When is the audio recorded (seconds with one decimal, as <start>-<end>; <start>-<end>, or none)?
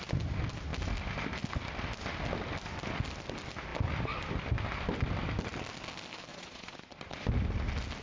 0.0-6.3; 7.2-8.0